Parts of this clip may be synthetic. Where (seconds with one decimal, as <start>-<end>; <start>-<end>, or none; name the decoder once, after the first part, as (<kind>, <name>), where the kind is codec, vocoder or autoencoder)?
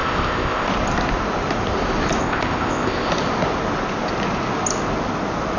0.0-0.7 (codec, ZipCodec); 2.2-3.1